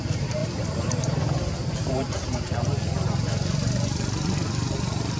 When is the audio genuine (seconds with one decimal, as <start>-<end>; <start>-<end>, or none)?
2.3-5.2